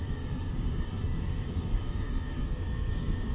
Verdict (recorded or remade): remade